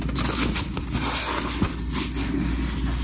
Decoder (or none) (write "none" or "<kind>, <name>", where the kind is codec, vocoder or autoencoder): none